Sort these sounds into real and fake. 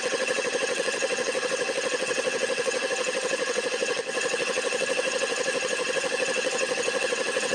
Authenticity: fake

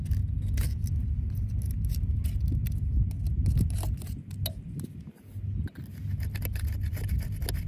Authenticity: real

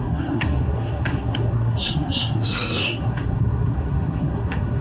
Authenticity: fake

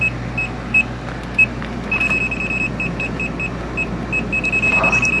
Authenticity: real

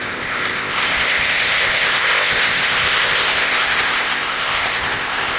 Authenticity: fake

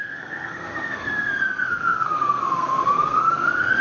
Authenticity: fake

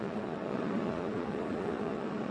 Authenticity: fake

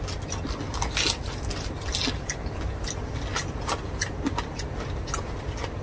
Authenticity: real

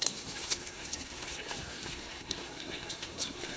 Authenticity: fake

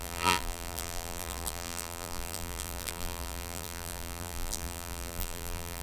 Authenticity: fake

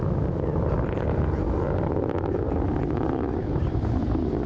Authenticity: real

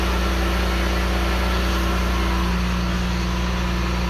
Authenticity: real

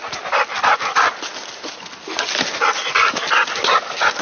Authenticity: real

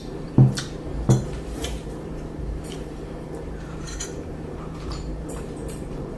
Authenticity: fake